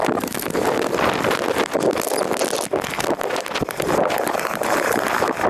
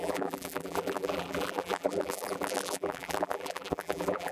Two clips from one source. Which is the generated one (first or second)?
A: second